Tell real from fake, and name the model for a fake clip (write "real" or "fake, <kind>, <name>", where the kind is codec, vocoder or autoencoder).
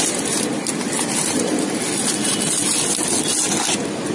real